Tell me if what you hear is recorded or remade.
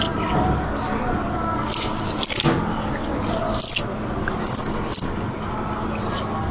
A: recorded